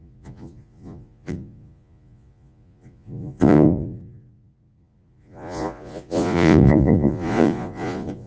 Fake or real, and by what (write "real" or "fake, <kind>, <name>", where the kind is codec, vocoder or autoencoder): fake, vocoder, Vocos